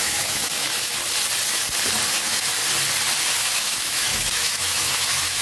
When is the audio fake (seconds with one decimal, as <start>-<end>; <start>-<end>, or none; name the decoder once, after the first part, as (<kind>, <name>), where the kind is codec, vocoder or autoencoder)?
0.0-1.0 (autoencoder, DAC-VAE); 2.1-2.6; 3.2-5.4